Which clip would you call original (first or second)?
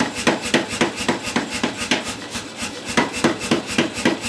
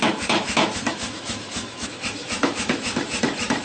first